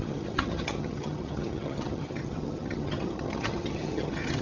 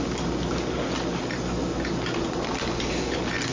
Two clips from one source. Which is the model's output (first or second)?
first